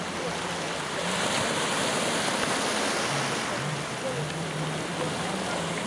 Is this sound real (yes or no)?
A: yes